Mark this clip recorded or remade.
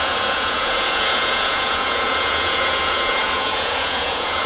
remade